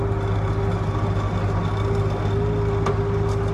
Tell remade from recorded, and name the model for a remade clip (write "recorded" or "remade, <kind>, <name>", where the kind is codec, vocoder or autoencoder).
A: recorded